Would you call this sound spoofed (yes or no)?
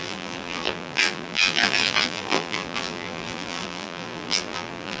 yes